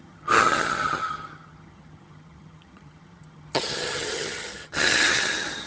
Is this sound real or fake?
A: fake